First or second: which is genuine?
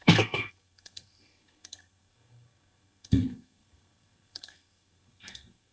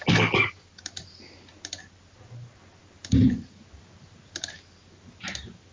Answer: second